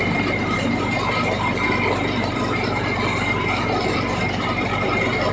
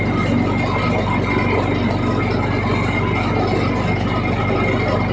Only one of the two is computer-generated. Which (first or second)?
first